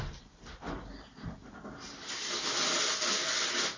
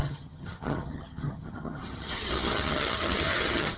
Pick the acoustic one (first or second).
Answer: first